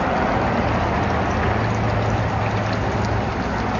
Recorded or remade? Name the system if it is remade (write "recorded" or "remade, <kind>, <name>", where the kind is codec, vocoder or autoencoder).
recorded